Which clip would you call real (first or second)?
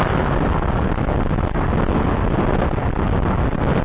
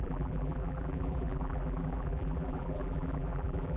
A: first